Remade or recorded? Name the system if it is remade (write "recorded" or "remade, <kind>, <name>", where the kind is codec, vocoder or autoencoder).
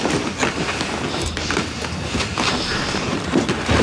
recorded